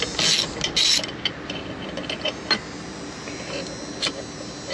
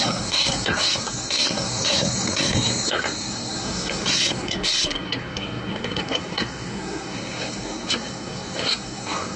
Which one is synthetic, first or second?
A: second